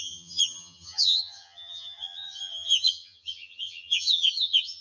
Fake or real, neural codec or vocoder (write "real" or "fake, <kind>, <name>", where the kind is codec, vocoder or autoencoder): fake, vocoder, HiFi-GAN